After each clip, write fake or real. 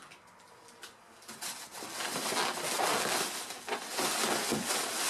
real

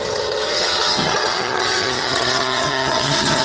fake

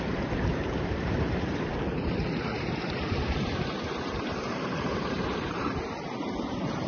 fake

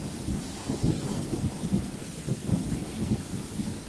fake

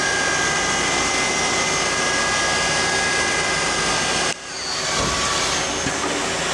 real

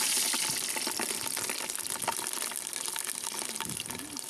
real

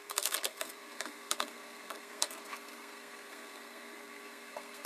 fake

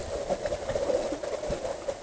real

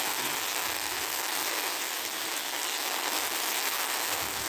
real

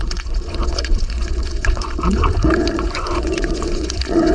fake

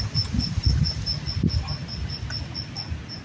real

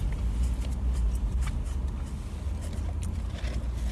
real